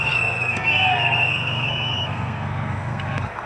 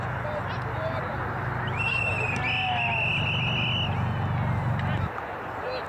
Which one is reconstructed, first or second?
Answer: first